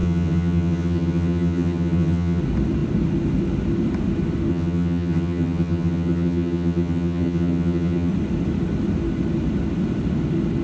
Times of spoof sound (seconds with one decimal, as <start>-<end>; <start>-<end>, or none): 0.0-2.4; 4.5-8.1